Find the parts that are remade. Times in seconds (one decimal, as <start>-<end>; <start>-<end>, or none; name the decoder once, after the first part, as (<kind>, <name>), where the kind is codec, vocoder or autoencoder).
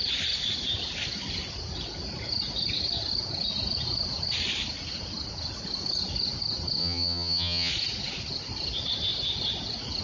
6.8-7.7 (vocoder, HiFi-GAN)